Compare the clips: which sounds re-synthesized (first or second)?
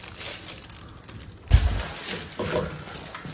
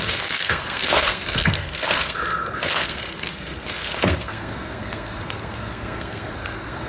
second